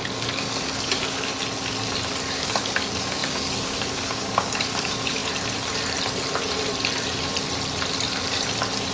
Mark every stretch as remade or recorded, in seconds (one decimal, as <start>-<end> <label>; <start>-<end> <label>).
0.0-1.3 remade; 1.3-2.2 recorded; 2.2-5.2 remade; 5.2-8.9 recorded